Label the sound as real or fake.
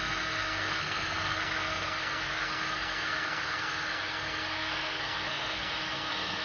fake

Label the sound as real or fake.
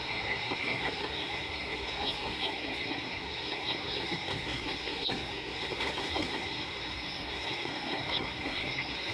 fake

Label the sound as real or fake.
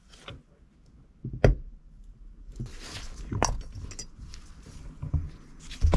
real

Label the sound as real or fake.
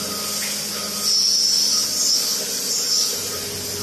real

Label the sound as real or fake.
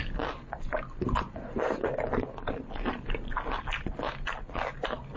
real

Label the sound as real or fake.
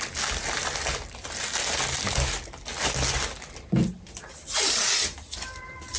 real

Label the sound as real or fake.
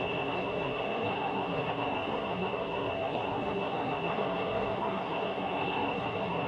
fake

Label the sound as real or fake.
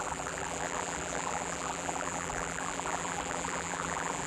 fake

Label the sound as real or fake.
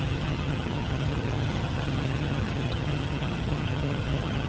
fake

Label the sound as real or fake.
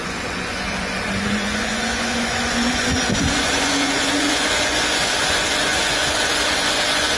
fake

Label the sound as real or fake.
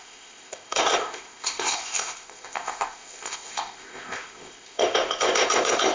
fake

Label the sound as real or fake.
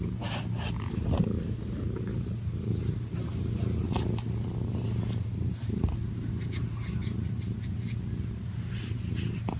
real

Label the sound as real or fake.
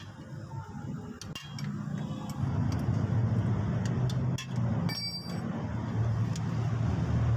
real